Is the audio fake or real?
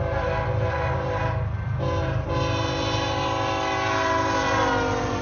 real